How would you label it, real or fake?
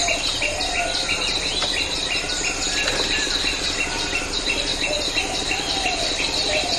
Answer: fake